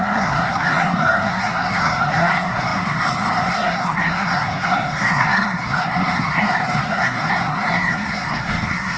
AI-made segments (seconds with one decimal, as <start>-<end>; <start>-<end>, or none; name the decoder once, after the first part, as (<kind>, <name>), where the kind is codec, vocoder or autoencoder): 0.0-9.0 (codec, SNAC)